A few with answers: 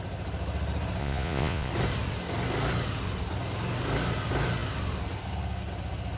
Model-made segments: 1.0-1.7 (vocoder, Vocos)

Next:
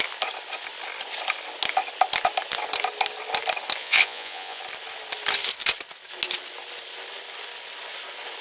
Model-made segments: 3.8-4.6 (vocoder, Vocos)

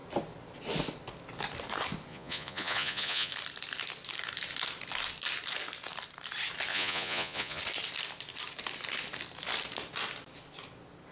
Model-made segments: 2.1-3.3 (vocoder, Vocos); 6.7-7.6

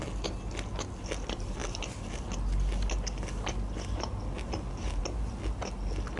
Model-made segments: none

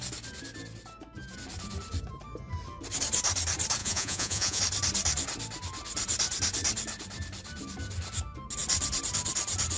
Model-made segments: 3.8-4.6 (vocoder, Vocos)

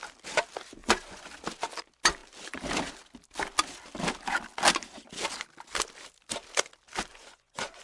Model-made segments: 0.8-1.3 (vocoder, Vocos); 7.1-7.8

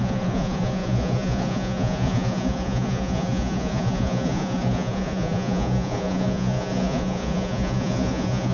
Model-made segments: 0.0-8.5 (vocoder, Vocos)

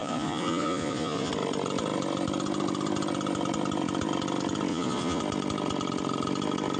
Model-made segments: 0.0-1.3 (vocoder, Vocos); 4.7-5.2